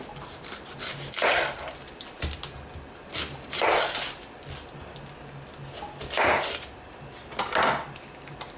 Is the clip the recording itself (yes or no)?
no